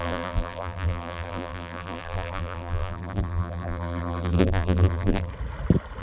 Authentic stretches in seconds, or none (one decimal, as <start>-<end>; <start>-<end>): 5.3-6.0